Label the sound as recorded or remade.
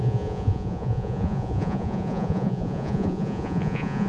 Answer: remade